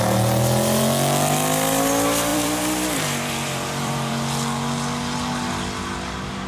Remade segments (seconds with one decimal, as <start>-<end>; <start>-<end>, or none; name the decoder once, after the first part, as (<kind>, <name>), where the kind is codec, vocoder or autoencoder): 2.3-4.1 (vocoder, BigVGAN v2)